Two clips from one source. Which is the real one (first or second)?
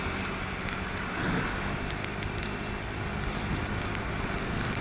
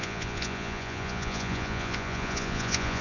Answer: first